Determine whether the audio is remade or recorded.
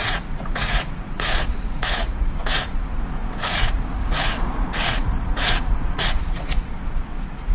remade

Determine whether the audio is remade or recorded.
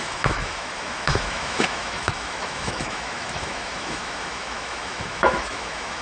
remade